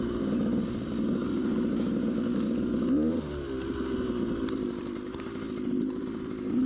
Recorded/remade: remade